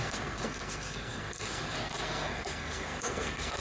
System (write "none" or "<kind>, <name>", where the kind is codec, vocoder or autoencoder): codec, SNAC